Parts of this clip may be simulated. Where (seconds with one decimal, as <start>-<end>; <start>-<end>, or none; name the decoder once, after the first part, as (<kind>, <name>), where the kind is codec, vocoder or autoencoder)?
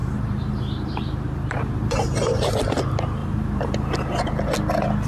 0.0-2.4 (vocoder, BigVGAN v2); 3.2-4.3